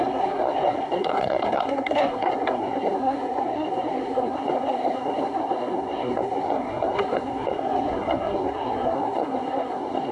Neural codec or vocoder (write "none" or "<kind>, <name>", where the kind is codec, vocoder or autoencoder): codec, SNAC